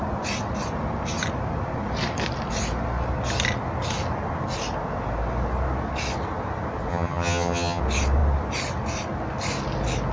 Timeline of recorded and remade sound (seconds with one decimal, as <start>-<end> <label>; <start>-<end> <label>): 0.0-6.9 recorded; 6.9-7.8 remade; 7.8-10.1 recorded